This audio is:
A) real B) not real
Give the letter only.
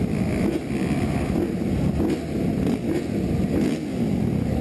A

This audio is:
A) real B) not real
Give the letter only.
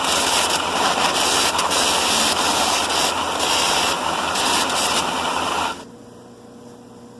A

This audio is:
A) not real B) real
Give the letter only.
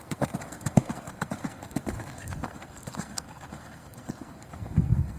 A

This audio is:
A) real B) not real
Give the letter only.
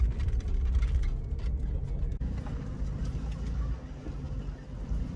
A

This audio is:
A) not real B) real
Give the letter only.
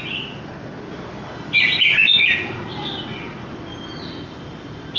B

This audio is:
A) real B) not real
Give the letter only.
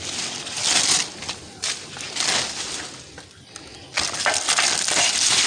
A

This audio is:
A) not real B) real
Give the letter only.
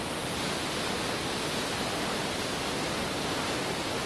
B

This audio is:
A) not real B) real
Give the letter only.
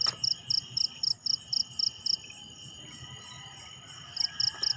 B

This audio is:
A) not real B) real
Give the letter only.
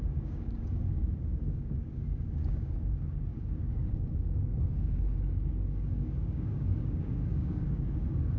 A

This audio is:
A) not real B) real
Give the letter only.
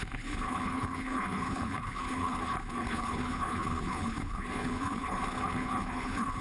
A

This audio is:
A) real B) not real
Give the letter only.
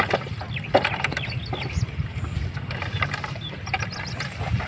A